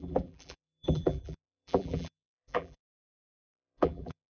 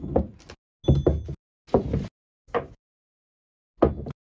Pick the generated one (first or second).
first